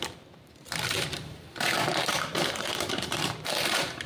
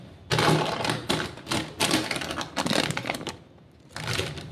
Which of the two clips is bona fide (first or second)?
second